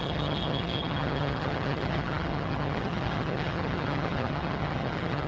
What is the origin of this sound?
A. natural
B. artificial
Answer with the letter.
B